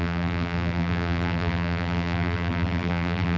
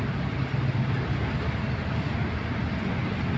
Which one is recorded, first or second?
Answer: second